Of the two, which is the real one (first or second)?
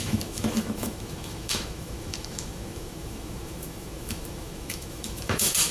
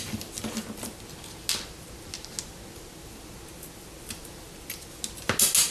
second